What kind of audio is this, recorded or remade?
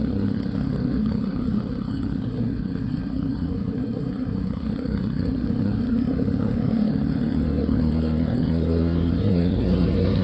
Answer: remade